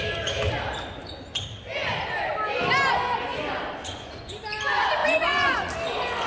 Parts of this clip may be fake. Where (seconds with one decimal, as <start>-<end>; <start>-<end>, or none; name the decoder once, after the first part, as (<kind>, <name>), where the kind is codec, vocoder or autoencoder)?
3.8-4.3 (vocoder, Vocos); 5.0-5.7